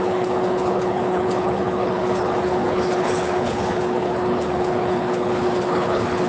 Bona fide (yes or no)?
no